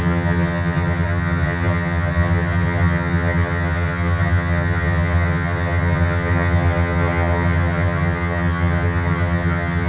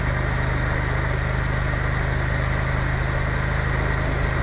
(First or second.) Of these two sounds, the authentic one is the second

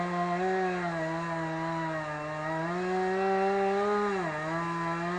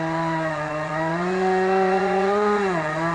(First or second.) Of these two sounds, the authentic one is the first